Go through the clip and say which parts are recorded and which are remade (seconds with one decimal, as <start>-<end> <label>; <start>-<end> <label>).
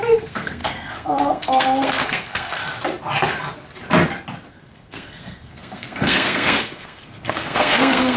0.0-2.6 remade; 2.6-4.5 recorded; 4.5-8.2 remade